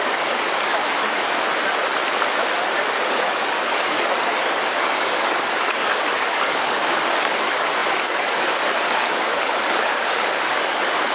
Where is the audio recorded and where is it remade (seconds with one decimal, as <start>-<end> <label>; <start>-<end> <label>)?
0.0-0.8 remade; 0.8-3.1 recorded; 3.1-11.1 remade